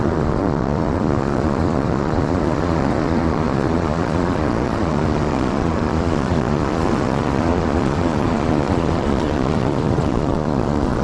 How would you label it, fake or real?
fake